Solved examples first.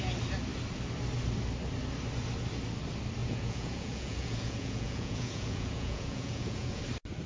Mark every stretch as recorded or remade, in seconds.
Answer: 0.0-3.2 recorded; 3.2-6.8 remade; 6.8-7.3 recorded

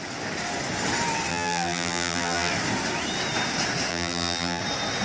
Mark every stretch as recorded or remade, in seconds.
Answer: 0.0-1.3 recorded; 1.3-2.5 remade; 2.5-3.9 recorded; 3.9-4.6 remade; 4.6-5.0 recorded